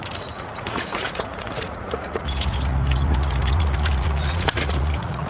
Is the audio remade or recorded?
remade